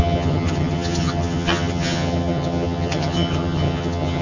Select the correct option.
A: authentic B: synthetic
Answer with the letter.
B